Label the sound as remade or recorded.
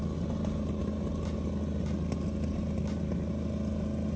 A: recorded